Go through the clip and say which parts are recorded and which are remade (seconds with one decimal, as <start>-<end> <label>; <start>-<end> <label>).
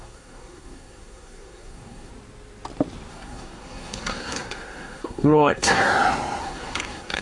0.0-2.1 remade; 2.1-3.1 recorded; 3.1-5.9 remade; 5.9-6.4 recorded; 6.4-7.2 remade